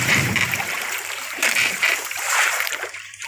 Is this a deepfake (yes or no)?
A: yes